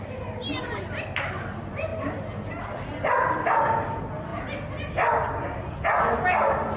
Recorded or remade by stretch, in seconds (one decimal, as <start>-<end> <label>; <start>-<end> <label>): 0.0-6.8 recorded